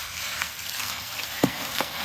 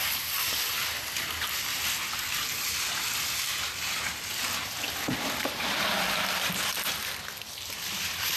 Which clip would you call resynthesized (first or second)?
first